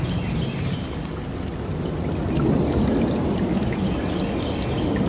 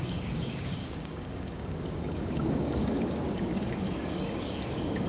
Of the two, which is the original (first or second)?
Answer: first